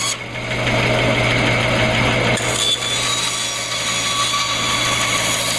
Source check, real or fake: real